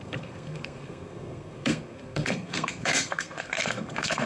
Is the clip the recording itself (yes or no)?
no